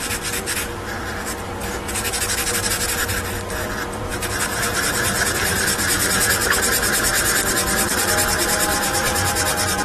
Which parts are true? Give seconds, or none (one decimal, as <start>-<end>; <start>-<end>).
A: 0.0-8.7